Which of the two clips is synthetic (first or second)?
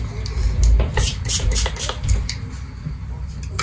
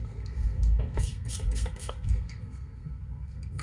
second